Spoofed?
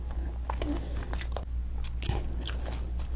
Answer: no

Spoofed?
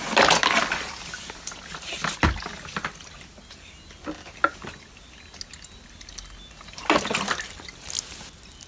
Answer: no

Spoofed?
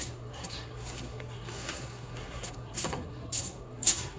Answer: yes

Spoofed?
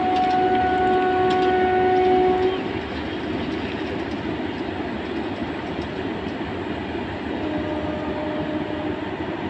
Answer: no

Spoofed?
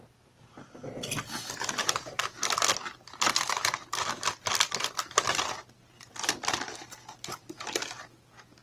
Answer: no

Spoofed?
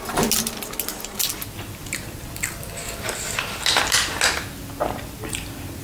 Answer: no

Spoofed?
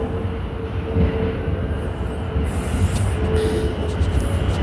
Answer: no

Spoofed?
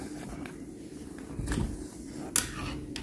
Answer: no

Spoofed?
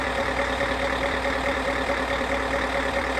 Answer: yes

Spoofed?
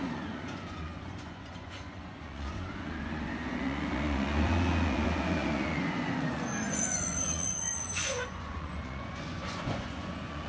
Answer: yes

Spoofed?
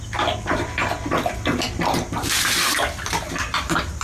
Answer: no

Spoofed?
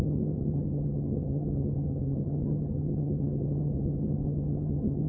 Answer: yes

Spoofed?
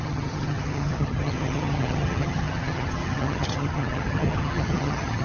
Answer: yes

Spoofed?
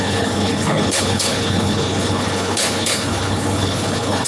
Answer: yes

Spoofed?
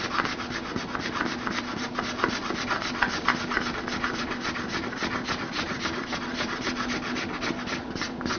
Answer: no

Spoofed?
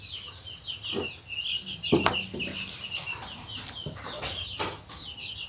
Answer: no